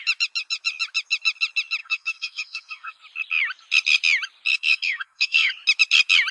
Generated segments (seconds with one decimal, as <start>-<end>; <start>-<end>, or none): 1.8-3.0; 4.5-5.5